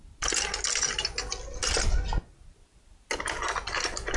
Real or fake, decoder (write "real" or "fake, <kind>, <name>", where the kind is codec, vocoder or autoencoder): real